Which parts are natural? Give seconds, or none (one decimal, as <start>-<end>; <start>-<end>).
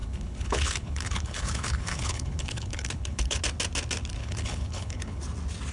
3.4-4.2; 5.2-5.7